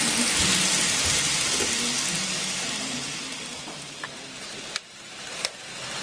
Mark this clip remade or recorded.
recorded